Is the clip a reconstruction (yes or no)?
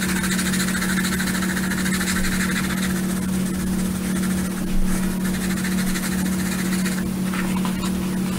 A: no